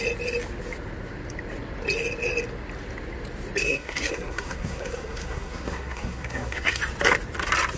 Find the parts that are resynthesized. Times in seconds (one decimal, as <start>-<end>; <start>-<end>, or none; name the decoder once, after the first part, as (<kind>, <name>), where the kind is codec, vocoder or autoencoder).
3.6-6.8 (codec, SNAC)